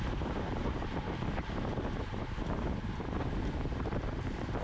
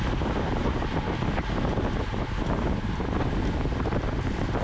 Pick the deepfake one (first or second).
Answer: first